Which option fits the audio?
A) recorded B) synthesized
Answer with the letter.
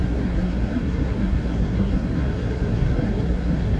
B